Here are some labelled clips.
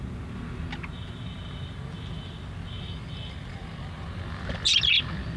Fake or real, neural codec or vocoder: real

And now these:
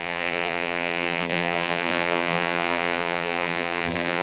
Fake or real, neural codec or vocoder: fake, vocoder, BigVGAN v2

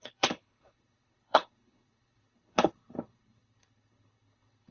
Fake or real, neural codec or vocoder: fake, codec, HILCodec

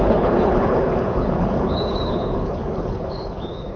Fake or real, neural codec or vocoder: fake, codec, HILCodec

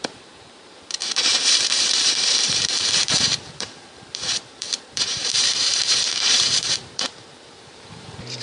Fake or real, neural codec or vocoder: fake, vocoder, BigVGAN v2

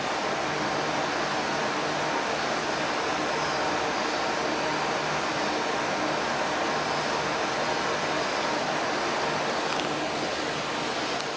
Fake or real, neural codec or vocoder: real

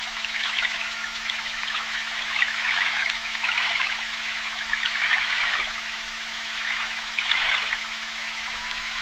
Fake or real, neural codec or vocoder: fake, autoencoder, DAC-VAE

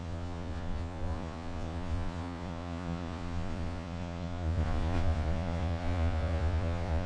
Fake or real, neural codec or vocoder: fake, vocoder, Vocos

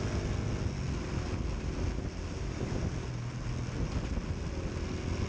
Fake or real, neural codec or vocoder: real